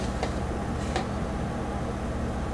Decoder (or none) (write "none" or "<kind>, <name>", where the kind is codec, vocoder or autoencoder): none